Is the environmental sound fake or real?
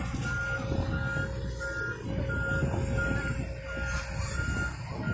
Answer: real